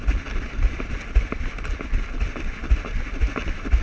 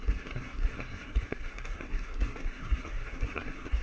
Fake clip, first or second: second